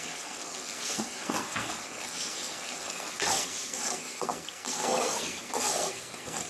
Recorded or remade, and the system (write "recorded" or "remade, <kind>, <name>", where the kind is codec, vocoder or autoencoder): remade, codec, SNAC